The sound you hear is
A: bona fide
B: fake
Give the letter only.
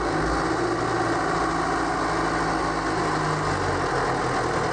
A